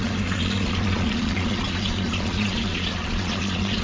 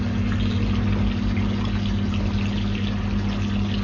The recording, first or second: second